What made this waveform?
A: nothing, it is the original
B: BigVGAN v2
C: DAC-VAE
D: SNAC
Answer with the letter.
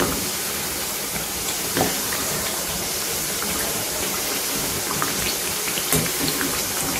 B